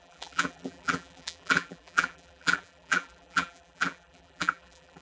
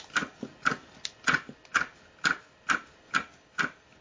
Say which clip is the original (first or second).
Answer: second